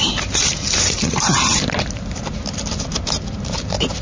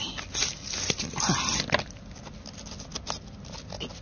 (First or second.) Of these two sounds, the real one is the second